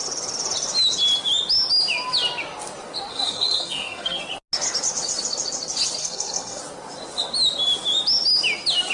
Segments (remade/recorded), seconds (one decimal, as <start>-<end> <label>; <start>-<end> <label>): 0.0-3.1 recorded; 3.1-4.2 remade; 4.2-6.0 recorded; 6.0-6.6 remade; 6.6-8.9 recorded